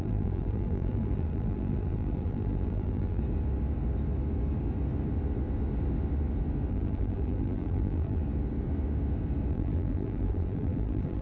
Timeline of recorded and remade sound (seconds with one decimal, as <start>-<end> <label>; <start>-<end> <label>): 0.0-3.2 remade; 3.2-6.7 recorded; 6.7-8.2 remade; 8.2-9.5 recorded; 9.5-11.2 remade